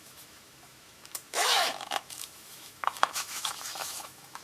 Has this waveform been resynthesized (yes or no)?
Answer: yes